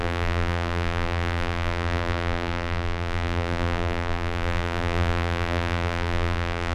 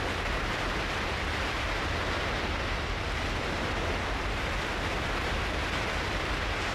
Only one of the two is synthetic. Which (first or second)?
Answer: first